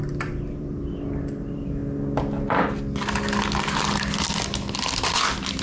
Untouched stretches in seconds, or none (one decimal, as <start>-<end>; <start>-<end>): 0.9-5.6